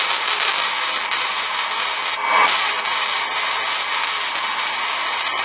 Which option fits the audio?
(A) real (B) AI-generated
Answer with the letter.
A